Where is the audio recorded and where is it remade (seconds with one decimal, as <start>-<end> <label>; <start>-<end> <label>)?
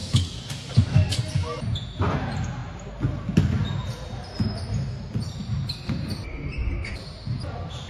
0.0-1.2 remade; 1.2-7.9 recorded